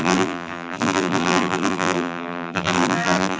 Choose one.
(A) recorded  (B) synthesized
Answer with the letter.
B